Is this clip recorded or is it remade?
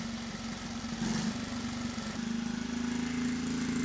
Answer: recorded